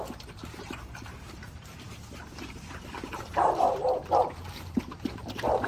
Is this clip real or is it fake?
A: fake